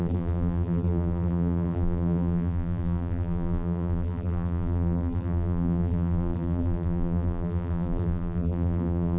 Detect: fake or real fake